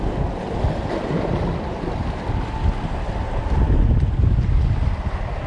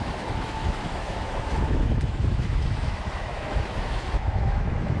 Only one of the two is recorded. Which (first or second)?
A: first